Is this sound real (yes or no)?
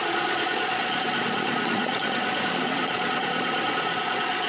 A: no